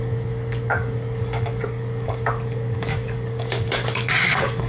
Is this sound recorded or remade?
remade